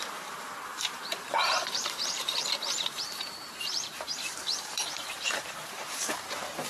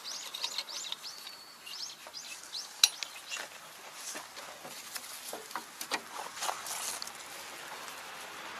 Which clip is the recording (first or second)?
second